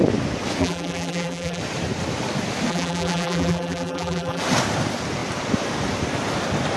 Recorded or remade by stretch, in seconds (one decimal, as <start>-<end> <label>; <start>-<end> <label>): 0.0-0.6 recorded; 0.6-1.6 remade; 1.6-2.7 recorded; 2.7-4.4 remade; 4.4-6.8 recorded